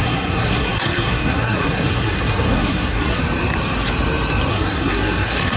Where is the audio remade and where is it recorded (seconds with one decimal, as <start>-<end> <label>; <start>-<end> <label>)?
0.0-3.2 remade; 3.2-4.5 recorded; 4.5-5.6 remade